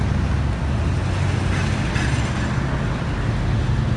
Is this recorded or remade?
recorded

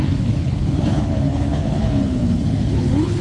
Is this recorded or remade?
remade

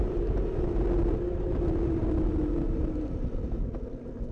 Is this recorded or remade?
recorded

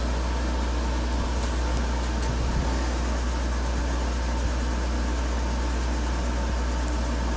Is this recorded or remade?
recorded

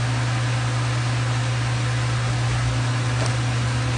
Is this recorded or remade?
recorded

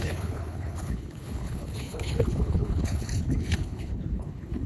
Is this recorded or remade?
remade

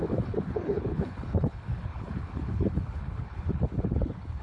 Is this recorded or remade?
remade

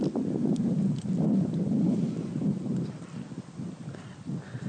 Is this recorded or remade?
recorded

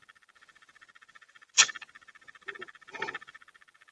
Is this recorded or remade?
recorded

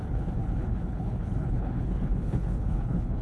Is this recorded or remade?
remade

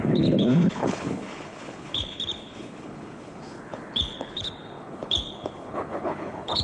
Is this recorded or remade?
remade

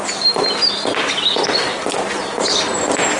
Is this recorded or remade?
recorded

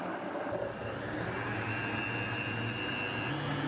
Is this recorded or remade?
recorded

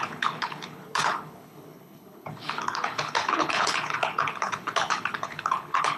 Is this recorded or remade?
remade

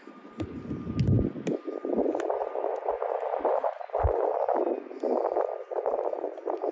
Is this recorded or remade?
recorded